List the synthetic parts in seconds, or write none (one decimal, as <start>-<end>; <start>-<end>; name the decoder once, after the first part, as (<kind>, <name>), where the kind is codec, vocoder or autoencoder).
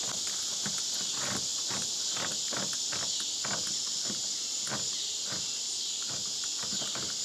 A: none